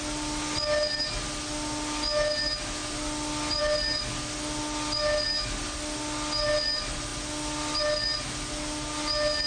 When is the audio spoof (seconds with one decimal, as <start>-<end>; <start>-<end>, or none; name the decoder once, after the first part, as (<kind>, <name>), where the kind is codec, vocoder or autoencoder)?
none